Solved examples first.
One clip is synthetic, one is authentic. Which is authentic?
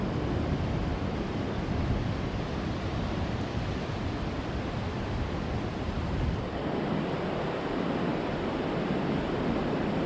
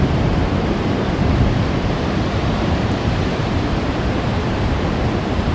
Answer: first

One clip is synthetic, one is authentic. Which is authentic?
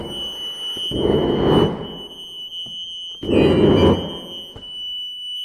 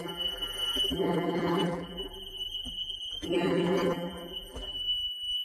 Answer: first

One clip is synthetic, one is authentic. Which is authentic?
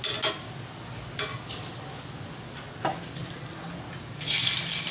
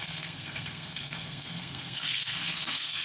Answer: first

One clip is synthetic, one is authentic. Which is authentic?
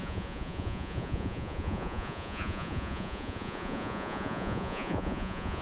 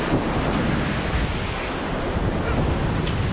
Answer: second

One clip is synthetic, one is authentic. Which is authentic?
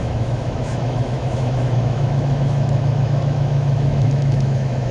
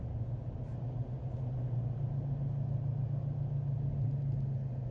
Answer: second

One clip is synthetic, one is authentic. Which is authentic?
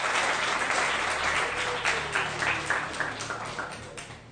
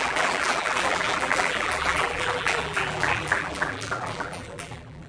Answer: first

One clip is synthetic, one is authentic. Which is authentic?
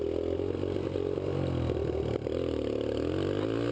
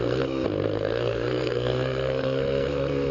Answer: first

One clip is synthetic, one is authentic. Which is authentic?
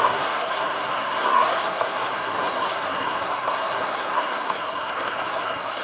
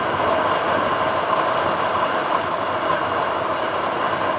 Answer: second